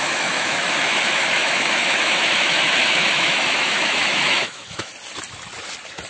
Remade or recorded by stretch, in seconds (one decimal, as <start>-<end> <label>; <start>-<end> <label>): 0.0-4.9 remade; 4.9-6.1 recorded